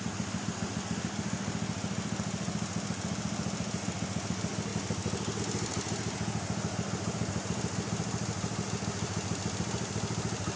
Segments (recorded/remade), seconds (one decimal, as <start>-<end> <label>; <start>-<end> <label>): 0.0-10.6 recorded